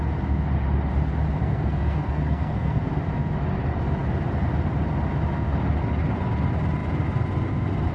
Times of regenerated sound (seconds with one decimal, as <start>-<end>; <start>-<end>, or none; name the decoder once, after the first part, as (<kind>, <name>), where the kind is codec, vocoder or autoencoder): 1.4-2.9 (codec, SNAC)